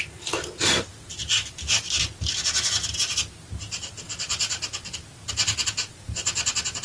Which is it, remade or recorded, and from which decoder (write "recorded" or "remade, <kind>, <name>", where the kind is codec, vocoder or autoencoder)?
recorded